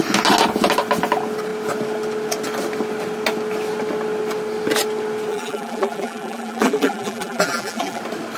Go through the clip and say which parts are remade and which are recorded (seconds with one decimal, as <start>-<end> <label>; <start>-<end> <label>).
0.0-5.3 recorded; 5.3-8.0 remade; 8.0-8.4 recorded